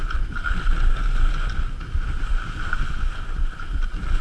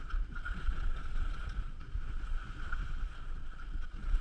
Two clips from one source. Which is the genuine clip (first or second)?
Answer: first